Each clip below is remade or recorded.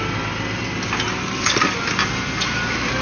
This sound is recorded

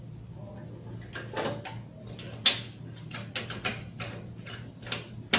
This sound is recorded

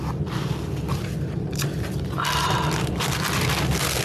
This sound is recorded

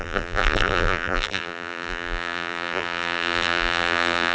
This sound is remade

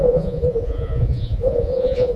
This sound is remade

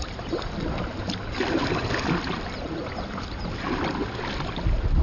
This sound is recorded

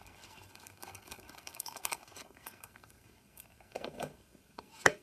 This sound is remade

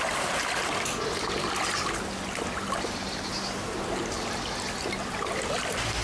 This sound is recorded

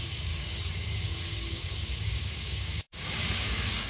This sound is remade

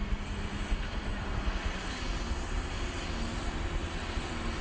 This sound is recorded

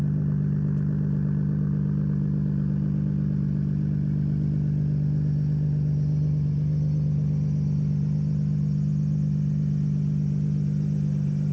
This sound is recorded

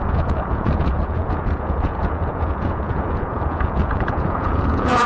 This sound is remade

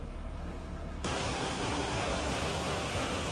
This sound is remade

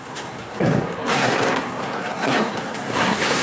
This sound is remade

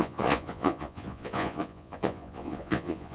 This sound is remade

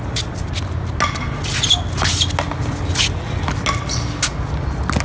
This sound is recorded